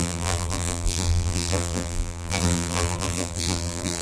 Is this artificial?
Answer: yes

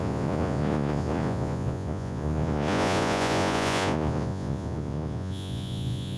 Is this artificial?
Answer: yes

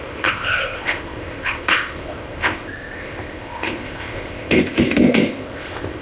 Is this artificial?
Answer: yes